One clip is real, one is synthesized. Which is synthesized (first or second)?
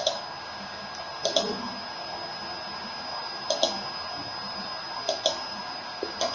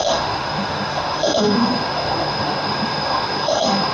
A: second